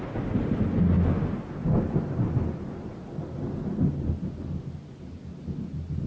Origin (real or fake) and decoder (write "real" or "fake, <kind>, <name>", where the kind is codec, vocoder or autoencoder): real